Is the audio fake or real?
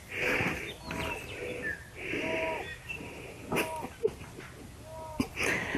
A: real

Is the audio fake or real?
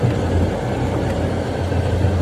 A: real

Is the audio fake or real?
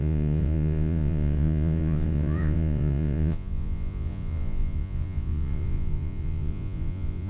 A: fake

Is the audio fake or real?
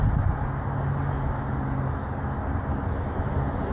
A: real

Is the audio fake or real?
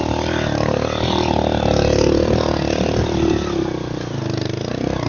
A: real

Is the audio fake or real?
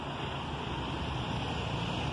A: real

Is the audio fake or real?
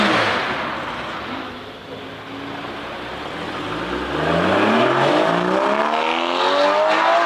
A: real